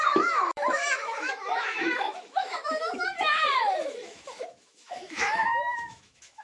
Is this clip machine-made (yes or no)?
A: yes